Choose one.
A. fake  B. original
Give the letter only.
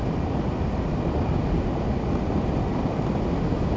B